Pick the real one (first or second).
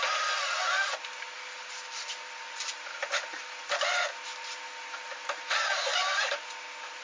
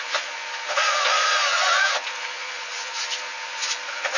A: first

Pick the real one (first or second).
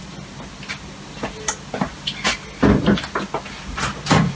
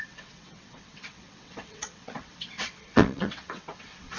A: first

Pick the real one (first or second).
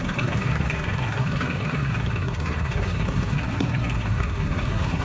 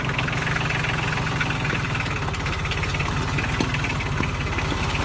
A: second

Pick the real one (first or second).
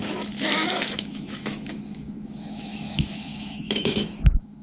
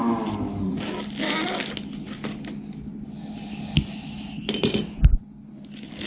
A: second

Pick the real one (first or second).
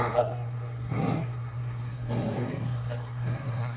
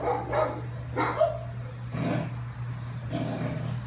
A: second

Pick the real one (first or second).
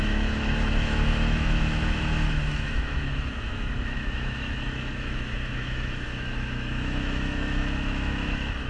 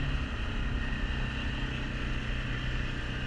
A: second